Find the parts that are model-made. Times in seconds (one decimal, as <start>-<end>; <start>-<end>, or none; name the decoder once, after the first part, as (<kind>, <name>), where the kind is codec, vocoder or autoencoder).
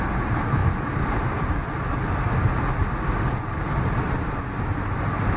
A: none